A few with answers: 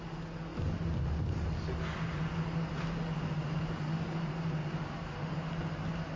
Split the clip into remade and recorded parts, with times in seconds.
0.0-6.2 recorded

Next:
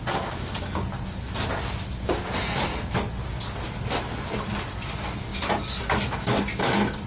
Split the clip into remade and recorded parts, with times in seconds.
0.0-7.1 recorded

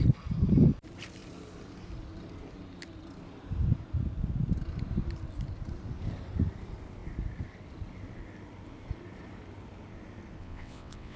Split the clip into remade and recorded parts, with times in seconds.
0.0-10.4 recorded; 10.4-11.2 remade

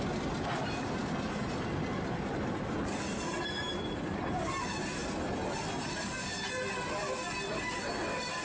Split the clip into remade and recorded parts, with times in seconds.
0.0-8.4 recorded

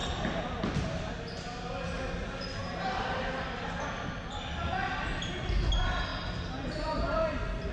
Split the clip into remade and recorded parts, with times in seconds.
0.0-7.7 recorded

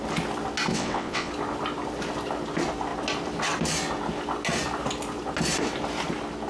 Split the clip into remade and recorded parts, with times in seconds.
0.0-0.7 recorded; 0.7-1.3 remade; 1.3-6.5 recorded